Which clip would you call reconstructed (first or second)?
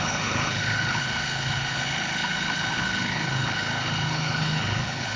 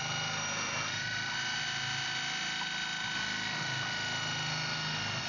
first